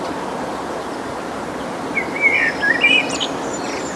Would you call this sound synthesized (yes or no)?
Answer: no